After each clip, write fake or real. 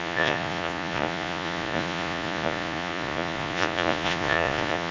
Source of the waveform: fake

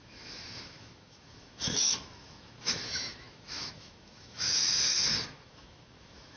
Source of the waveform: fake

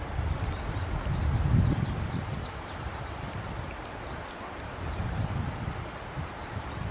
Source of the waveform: real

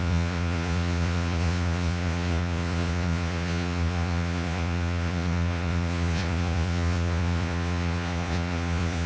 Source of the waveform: fake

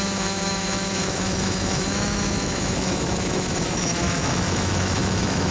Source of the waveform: fake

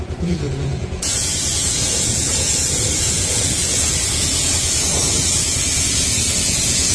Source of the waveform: fake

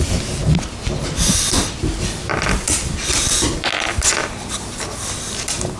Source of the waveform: real